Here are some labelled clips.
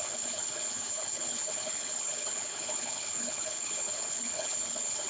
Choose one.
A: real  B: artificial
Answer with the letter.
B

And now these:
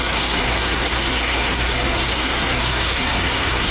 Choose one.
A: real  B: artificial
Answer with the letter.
B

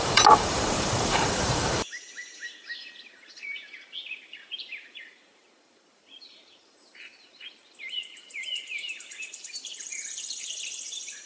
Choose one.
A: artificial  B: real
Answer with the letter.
A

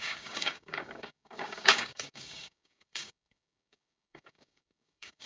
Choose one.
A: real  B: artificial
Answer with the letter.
B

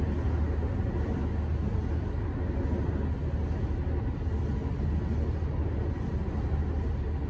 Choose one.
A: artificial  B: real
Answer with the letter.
B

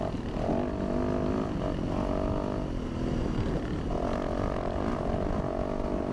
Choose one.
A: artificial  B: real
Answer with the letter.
B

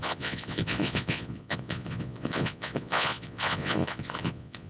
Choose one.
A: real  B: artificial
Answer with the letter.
B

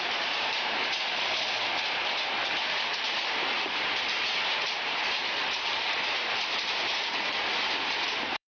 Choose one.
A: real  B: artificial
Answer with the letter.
B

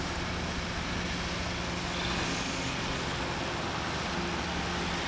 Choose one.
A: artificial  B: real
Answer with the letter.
B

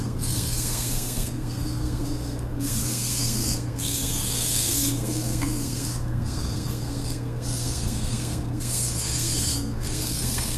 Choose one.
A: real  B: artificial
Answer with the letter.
B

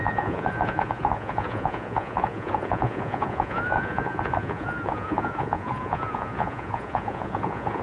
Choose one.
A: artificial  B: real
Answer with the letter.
A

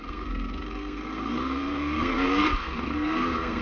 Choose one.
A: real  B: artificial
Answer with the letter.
B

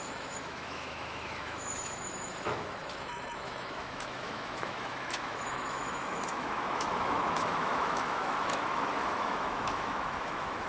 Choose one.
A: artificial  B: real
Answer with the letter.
A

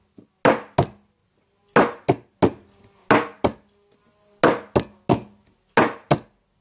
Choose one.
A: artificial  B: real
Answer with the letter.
B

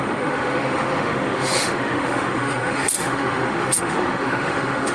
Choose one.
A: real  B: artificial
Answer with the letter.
B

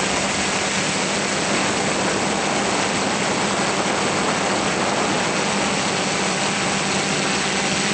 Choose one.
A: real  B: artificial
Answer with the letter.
A